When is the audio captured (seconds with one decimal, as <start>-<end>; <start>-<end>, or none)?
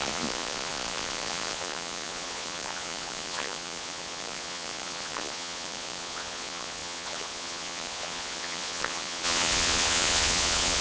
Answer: none